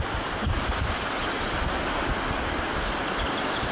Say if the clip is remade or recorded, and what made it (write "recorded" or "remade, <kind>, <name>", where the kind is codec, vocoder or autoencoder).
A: recorded